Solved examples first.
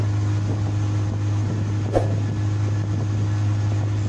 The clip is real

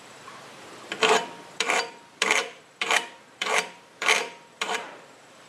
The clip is fake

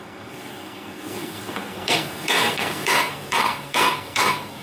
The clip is fake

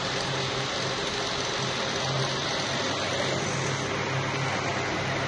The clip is real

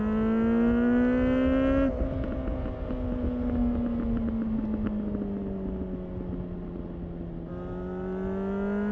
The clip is real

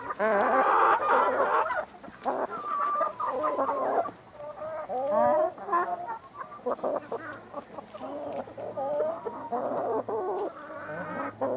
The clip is real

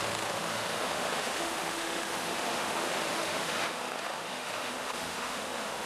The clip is fake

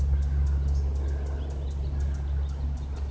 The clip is fake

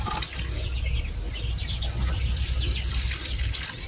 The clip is real